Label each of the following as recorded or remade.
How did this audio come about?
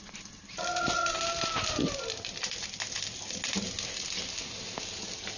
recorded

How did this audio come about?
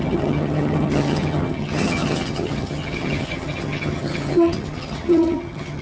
remade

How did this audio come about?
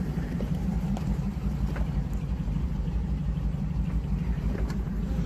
remade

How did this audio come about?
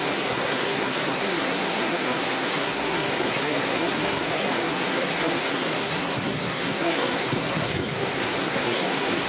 remade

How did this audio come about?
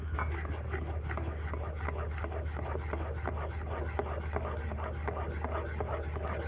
recorded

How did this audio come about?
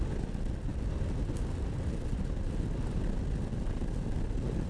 recorded